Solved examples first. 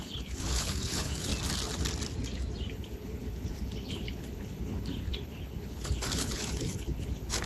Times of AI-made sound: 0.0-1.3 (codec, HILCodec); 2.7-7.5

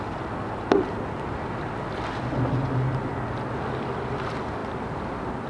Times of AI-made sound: none

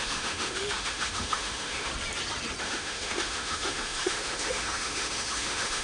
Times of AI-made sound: 0.0-1.9 (autoencoder, DAC-VAE); 2.6-5.8

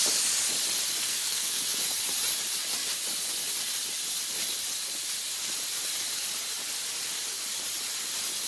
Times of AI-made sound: 1.0-1.6 (codec, SNAC)

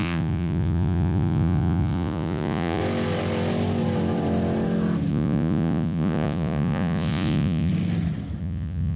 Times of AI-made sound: 0.0-2.8 (vocoder, Vocos); 5.1-7.7; 8.4-9.0

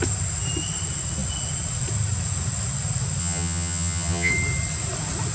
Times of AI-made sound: 3.2-4.3 (vocoder, HiFi-GAN)